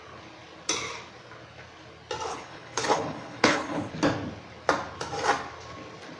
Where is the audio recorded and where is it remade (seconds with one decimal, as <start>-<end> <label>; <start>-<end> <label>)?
0.0-2.3 recorded; 2.3-3.9 remade; 3.9-6.2 recorded